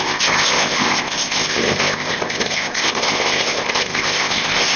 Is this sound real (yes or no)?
no